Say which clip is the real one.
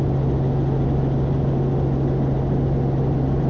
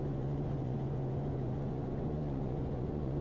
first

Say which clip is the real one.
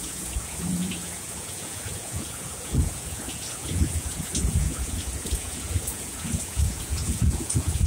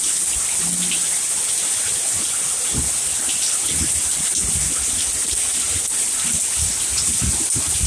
second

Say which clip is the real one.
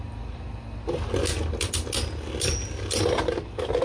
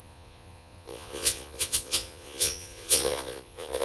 first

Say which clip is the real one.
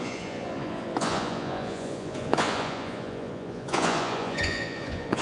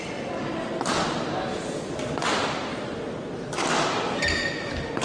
second